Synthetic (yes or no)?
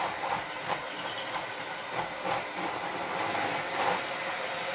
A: no